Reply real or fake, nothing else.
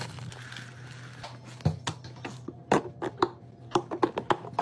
real